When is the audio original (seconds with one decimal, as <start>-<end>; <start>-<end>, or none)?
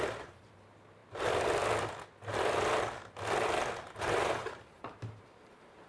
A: 1.0-4.0